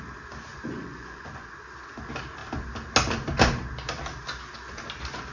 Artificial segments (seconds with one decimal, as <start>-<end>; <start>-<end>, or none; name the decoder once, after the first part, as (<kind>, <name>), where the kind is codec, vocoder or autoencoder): 0.5-1.5 (vocoder, Vocos)